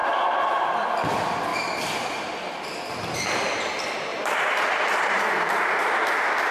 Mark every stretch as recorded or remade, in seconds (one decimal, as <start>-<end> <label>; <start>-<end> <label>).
0.0-1.5 recorded; 1.5-2.1 remade; 2.1-4.1 recorded; 4.1-5.8 remade; 5.8-6.5 recorded